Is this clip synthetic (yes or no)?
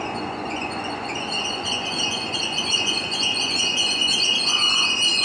yes